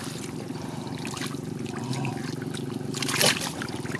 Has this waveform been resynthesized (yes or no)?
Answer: no